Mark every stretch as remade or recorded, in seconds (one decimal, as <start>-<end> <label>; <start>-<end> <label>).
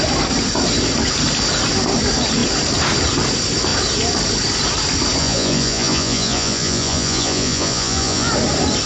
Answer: 0.0-5.2 recorded; 5.2-8.3 remade; 8.3-8.9 recorded